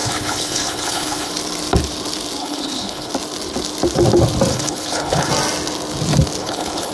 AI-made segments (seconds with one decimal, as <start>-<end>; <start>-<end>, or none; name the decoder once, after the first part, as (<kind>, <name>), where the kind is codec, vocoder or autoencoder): 0.0-1.3 (codec, HILCodec); 2.4-3.1; 4.5-5.3; 6.4-6.9